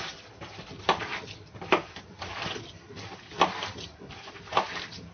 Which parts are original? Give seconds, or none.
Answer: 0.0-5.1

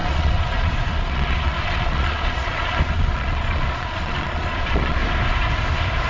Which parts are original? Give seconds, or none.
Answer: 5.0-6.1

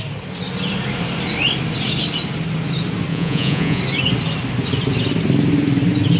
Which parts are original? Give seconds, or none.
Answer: 0.0-3.1; 3.8-6.2

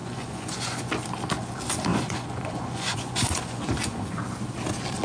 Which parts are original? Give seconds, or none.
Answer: 0.9-1.9; 4.2-5.0